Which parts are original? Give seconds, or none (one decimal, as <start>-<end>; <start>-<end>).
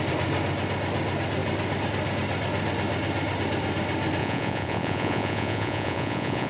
0.0-4.2